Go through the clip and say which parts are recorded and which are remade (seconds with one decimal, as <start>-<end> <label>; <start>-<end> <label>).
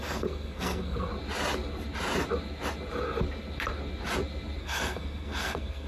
0.0-1.1 remade; 1.1-4.6 recorded; 4.6-5.9 remade